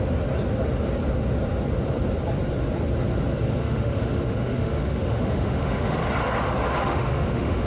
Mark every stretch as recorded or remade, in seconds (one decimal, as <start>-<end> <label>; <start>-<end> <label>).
0.0-3.6 recorded; 3.6-6.0 remade; 6.0-6.8 recorded; 6.8-7.7 remade